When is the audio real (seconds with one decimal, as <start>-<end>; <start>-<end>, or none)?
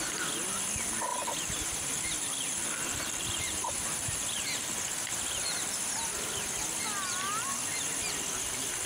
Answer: 0.0-1.1; 4.7-8.9